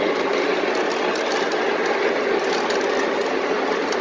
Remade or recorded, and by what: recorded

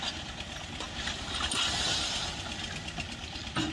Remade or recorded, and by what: recorded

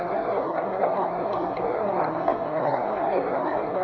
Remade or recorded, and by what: remade, codec, SNAC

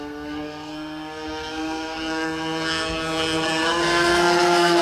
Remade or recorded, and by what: remade, codec, SNAC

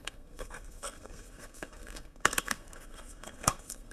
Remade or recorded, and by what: remade, codec, SNAC